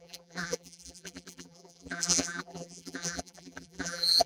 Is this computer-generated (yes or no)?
yes